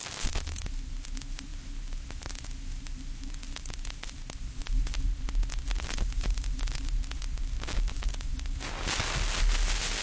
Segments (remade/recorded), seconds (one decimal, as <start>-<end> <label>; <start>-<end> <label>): 0.0-10.0 recorded